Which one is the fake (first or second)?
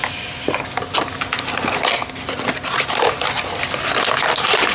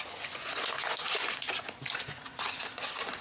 second